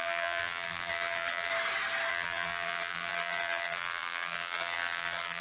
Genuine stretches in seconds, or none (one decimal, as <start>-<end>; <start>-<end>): 1.5-2.1